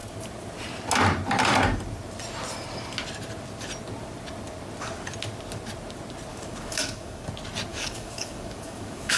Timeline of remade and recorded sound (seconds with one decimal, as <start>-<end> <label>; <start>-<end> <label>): 0.0-6.3 recorded; 6.3-7.3 remade; 7.3-7.7 recorded; 7.7-9.2 remade